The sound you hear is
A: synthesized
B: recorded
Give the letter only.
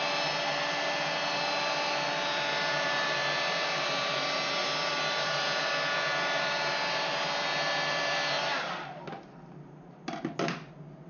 B